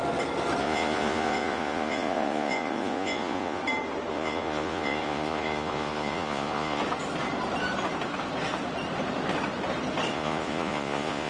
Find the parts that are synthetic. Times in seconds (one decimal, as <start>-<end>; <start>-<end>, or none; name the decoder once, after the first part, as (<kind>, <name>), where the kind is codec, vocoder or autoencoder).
0.6-3.6 (vocoder, Vocos); 4.1-6.8; 10.1-11.3